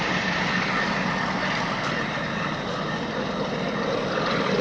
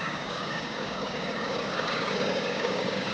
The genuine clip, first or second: first